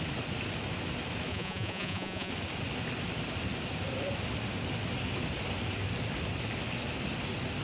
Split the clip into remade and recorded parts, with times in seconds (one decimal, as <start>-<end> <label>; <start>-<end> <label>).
0.0-1.3 recorded; 1.3-2.3 remade; 2.3-7.6 recorded